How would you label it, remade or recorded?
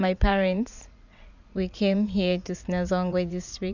remade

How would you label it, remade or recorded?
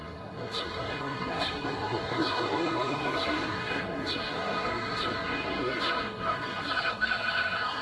remade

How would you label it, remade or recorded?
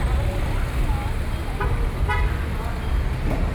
recorded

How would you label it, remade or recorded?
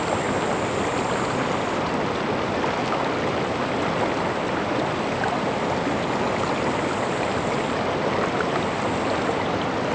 recorded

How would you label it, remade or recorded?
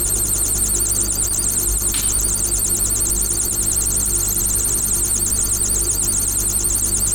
recorded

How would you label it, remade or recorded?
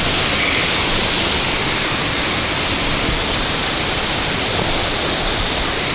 recorded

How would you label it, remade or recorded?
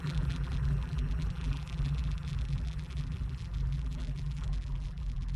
remade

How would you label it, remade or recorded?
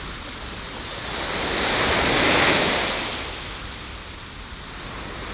recorded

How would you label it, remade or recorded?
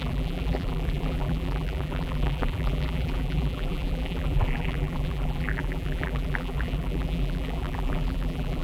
remade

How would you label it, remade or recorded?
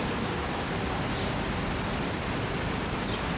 recorded